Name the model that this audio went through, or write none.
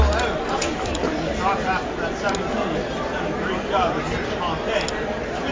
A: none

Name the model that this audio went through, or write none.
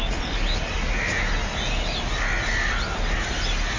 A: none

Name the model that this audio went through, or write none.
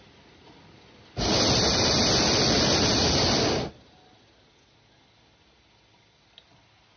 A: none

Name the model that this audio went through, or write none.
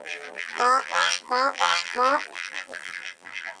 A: vocoder, BigVGAN v2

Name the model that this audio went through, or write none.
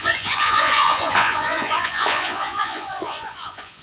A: vocoder, Vocos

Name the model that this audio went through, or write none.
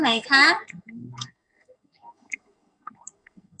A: codec, SNAC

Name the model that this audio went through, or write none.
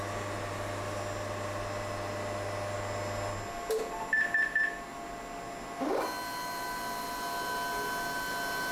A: none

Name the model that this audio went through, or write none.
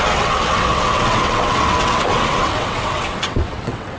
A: vocoder, WaveNeXt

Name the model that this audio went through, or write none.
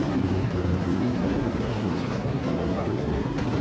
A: codec, SNAC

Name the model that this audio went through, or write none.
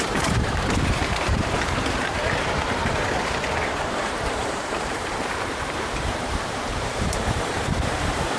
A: vocoder, BigVGAN v2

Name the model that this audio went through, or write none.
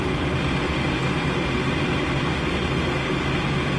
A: none